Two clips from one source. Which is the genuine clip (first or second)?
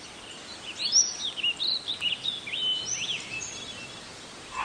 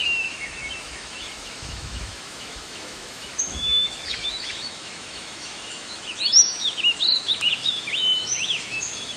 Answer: first